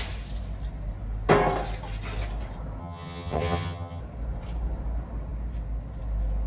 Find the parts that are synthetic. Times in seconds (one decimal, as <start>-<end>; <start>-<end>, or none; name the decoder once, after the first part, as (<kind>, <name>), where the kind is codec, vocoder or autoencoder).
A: 2.8-4.0 (vocoder, HiFi-GAN)